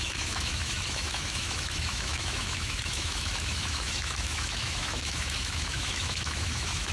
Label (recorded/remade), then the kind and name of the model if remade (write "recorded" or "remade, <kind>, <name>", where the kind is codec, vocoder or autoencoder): remade, autoencoder, DAC-VAE